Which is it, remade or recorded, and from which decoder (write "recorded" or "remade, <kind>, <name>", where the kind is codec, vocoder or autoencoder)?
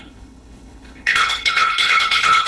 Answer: remade, codec, HILCodec